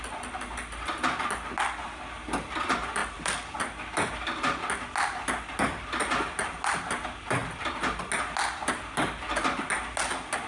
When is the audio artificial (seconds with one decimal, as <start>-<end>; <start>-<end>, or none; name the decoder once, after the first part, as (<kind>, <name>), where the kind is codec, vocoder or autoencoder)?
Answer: none